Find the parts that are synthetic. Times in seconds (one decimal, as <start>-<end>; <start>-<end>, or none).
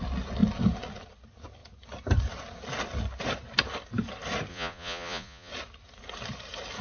4.5-5.5